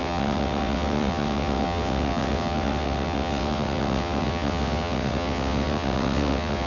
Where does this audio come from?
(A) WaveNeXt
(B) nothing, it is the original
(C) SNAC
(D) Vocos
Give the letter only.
A